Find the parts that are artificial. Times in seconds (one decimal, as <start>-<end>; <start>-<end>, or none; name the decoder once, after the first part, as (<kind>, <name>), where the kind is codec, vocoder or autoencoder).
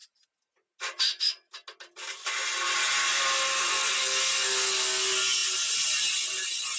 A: none